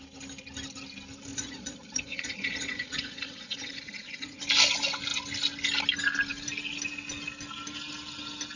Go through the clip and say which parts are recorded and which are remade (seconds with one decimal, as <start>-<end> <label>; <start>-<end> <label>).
0.0-1.3 recorded; 1.3-4.4 remade; 4.4-8.6 recorded